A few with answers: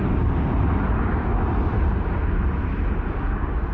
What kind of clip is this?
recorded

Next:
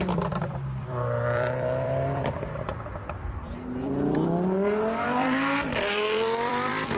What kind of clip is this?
remade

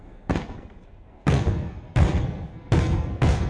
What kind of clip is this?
remade